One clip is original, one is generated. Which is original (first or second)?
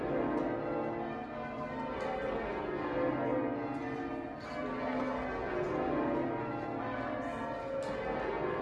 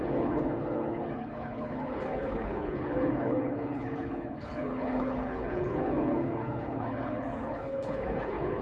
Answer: first